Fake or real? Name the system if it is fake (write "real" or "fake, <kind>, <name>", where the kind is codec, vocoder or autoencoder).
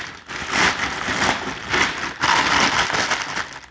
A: real